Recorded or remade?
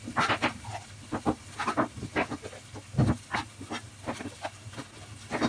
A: recorded